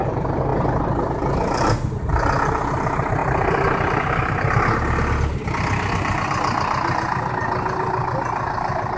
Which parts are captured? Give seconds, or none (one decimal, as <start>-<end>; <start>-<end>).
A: 0.0-9.0